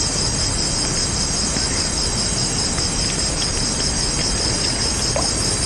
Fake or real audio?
real